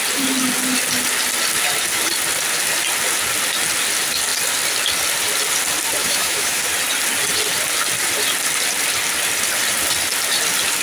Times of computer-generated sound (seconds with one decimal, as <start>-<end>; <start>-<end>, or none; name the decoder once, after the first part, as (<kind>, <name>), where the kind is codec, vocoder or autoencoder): 6.0-6.6 (autoencoder, DAC-VAE)